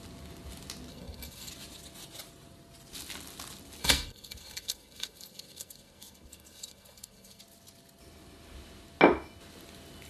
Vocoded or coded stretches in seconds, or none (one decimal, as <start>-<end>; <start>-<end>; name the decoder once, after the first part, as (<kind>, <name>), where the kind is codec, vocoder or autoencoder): 0.9-1.5 (codec, SNAC); 3.8-7.4